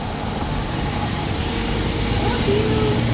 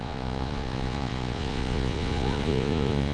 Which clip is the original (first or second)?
first